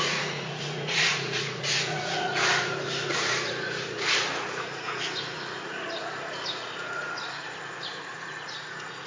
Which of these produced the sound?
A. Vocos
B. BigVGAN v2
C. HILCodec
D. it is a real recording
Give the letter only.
A